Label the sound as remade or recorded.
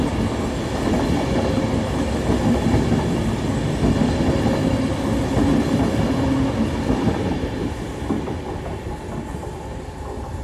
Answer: recorded